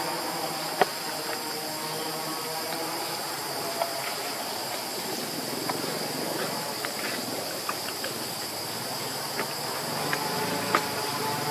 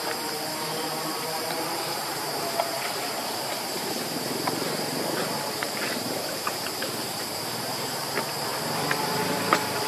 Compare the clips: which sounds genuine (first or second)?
first